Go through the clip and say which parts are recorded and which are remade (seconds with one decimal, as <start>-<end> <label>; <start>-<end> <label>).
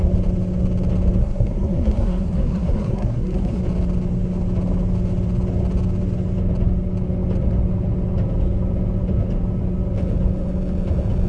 0.0-1.2 recorded; 1.2-3.6 remade; 3.6-11.3 recorded